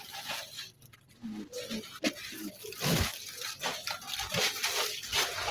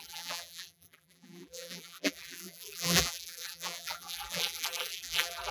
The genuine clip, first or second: first